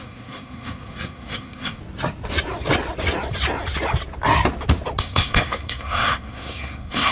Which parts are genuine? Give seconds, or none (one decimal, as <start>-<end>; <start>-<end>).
1.8-5.0